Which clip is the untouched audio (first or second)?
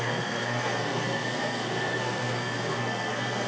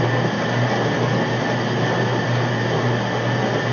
second